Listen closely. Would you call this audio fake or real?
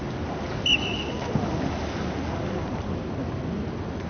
real